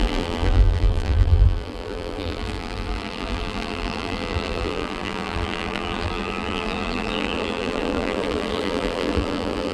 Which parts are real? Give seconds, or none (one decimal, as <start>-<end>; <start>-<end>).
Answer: none